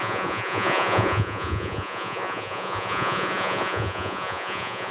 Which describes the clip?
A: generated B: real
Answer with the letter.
A